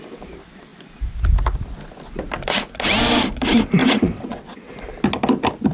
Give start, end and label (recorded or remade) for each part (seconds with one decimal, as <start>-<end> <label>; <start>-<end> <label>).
0.0-3.8 recorded; 3.8-4.7 remade; 4.7-5.7 recorded